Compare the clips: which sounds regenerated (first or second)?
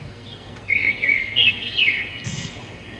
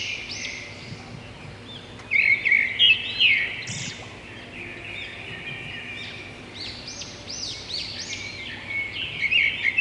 first